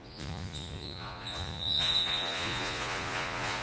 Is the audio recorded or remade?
remade